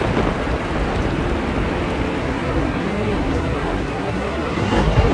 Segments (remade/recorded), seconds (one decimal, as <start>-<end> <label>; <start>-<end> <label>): 0.0-2.2 recorded; 2.2-5.1 remade